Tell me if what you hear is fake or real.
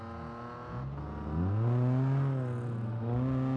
real